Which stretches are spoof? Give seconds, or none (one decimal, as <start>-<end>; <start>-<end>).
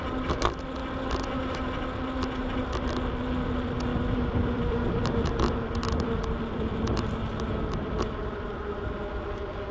3.9-8.0